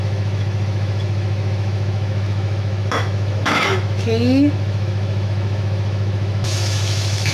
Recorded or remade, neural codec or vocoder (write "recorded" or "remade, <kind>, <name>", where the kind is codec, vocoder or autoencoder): remade, autoencoder, DAC-VAE